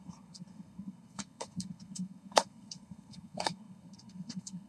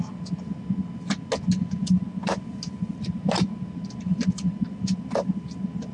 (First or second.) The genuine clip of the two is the second